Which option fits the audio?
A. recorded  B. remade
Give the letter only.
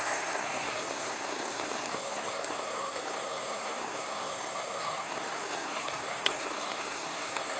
B